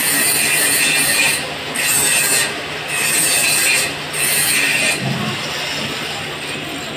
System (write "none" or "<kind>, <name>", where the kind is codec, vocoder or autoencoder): none